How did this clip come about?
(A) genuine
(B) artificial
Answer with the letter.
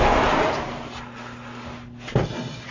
A